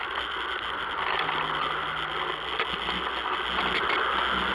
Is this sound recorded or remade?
recorded